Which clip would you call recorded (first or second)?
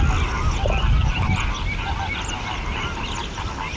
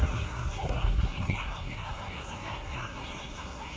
first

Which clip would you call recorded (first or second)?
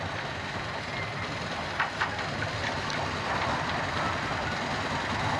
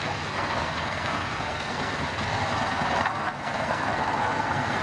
first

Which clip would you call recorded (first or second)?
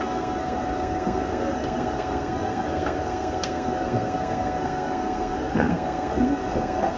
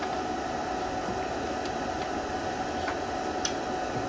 second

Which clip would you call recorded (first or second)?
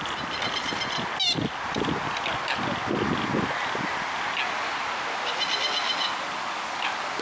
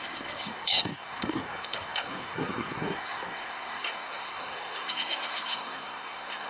first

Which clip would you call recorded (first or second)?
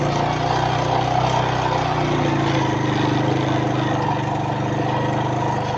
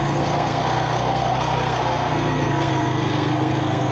first